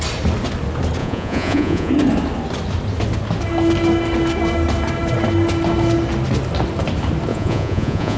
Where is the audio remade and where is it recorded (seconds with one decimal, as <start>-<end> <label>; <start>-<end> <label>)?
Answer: 0.0-1.0 recorded; 1.0-1.9 remade; 1.9-7.3 recorded; 7.3-8.2 remade